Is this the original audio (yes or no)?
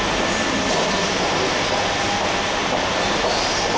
yes